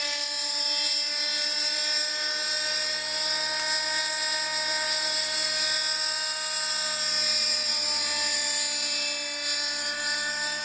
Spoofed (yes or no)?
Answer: no